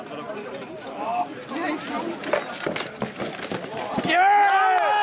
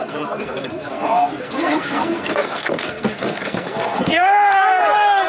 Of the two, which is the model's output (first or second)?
second